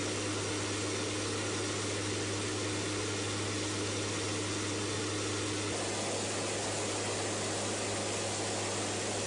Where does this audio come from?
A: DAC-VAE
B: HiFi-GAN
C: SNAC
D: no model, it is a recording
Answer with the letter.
D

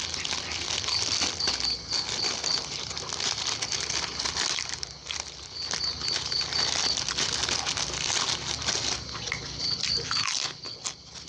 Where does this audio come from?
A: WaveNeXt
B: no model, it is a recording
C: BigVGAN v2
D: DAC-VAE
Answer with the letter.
B